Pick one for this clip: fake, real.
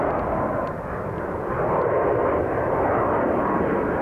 real